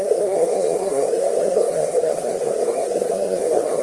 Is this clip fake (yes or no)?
yes